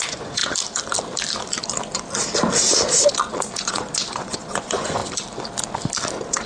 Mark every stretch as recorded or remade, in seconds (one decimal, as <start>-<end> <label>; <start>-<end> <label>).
0.0-0.4 remade; 0.4-3.6 recorded; 3.6-5.0 remade; 5.0-6.5 recorded